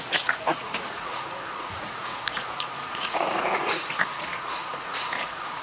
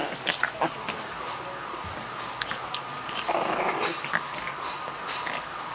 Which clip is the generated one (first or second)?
first